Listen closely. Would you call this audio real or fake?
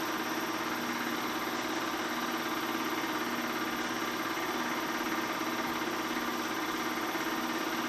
real